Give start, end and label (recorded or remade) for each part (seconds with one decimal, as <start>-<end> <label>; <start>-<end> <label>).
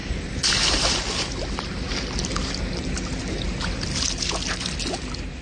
0.0-5.4 recorded